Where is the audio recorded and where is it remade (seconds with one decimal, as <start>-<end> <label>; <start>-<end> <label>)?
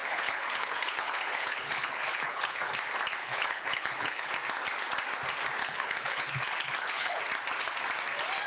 0.0-2.7 remade; 2.7-3.2 recorded; 3.2-4.3 remade; 4.3-5.6 recorded; 5.6-7.2 remade; 7.2-8.5 recorded